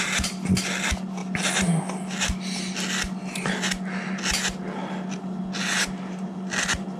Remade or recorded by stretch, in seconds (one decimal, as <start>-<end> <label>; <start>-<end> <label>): 0.0-7.0 recorded